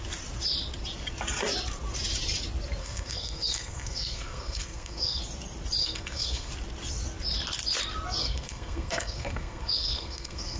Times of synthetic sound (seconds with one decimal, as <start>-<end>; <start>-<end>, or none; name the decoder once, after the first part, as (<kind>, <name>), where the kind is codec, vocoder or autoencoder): 2.8-5.2 (codec, SNAC); 5.8-6.5; 8.2-10.6